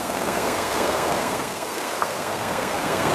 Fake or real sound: fake